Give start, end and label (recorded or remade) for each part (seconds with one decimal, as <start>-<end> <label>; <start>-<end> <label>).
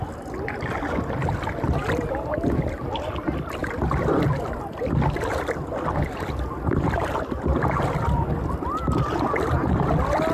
0.0-10.3 recorded